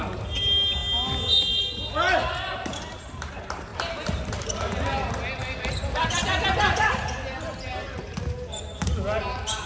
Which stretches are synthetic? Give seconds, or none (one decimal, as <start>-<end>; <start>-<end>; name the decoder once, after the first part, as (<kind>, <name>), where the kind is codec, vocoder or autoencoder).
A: none